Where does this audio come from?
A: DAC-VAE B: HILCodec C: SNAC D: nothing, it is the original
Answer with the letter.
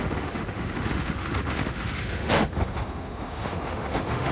A